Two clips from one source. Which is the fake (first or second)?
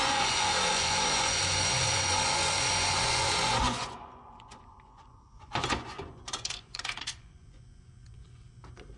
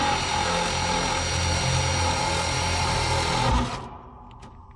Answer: first